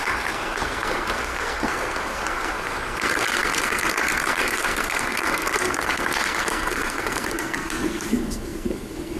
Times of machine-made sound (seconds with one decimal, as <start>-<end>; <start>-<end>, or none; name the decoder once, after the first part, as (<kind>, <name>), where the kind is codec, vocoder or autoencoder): 0.0-9.2 (codec, SNAC)